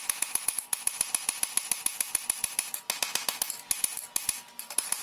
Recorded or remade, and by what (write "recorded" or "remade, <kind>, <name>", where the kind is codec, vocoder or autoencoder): recorded